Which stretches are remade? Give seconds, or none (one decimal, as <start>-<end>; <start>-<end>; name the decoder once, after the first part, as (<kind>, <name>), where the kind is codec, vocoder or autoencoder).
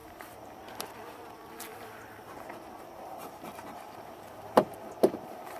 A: 0.0-5.6 (vocoder, BigVGAN v2)